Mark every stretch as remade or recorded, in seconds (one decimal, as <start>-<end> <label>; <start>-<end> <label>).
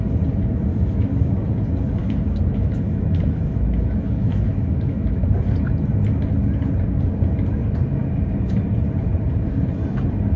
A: 0.0-0.7 recorded; 0.7-1.5 remade; 1.5-2.0 recorded; 2.0-5.2 remade; 5.2-10.4 recorded